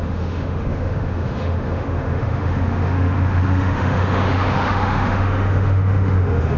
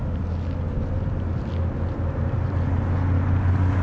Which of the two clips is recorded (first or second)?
second